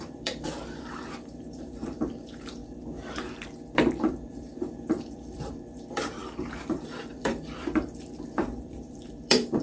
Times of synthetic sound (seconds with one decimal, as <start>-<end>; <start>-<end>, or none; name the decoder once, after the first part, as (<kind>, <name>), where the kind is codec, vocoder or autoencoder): 0.0-2.6 (vocoder, BigVGAN v2); 4.3-9.6